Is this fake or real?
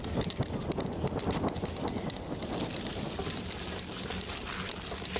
real